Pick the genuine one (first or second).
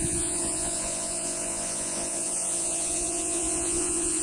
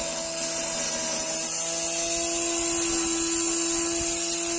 second